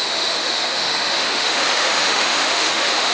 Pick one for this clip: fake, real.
fake